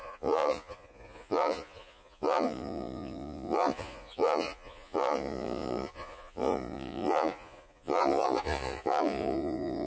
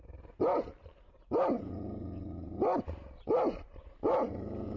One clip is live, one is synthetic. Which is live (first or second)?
second